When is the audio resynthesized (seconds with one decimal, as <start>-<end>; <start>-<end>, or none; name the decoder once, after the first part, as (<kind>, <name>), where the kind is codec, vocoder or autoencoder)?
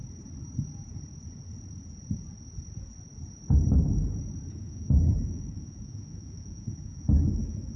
4.5-7.8 (autoencoder, DAC-VAE)